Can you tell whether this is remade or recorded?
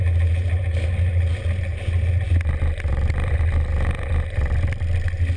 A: recorded